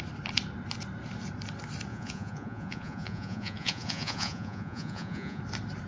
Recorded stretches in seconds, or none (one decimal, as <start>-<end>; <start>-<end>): 0.0-1.9; 5.4-5.9